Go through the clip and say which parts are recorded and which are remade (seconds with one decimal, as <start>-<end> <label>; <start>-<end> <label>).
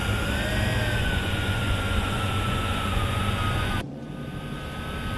0.0-1.0 recorded; 1.0-4.1 remade; 4.1-5.2 recorded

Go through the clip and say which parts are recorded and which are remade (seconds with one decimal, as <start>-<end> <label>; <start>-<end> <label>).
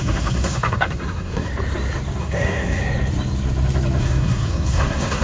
0.0-1.5 remade; 1.5-2.2 recorded; 2.2-2.8 remade; 2.8-4.0 recorded; 4.0-5.2 remade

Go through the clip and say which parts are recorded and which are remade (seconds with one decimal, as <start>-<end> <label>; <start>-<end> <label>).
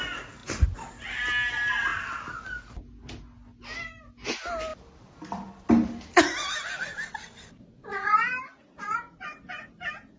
0.0-10.2 recorded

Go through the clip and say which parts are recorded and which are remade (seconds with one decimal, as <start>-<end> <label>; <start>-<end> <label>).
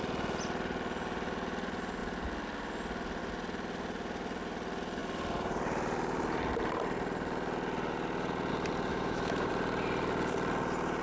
0.0-8.9 recorded; 8.9-9.5 remade; 9.5-11.0 recorded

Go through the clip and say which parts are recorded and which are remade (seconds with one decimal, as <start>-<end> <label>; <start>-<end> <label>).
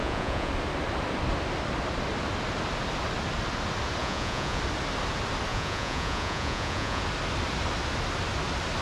0.0-0.5 remade; 0.5-4.0 recorded; 4.0-4.6 remade; 4.6-5.5 recorded; 5.5-7.0 remade; 7.0-8.8 recorded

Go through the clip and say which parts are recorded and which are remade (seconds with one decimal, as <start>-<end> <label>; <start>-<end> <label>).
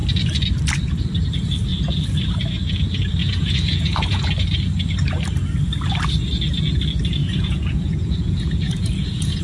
0.0-3.2 recorded; 3.2-4.3 remade; 4.3-7.2 recorded; 7.2-9.4 remade